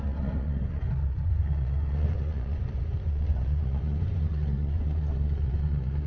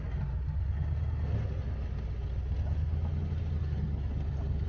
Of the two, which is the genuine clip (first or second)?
second